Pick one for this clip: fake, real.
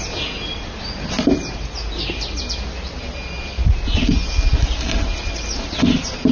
real